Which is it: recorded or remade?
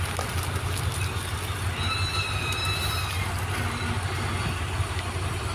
recorded